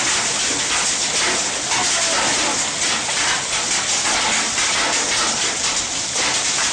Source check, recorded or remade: recorded